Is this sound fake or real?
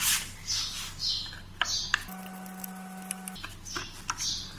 real